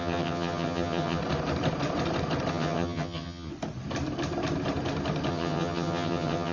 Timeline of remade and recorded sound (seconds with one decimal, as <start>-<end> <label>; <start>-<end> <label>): 0.0-1.2 remade; 1.2-2.5 recorded; 2.5-3.5 remade; 3.5-5.3 recorded; 5.3-6.5 remade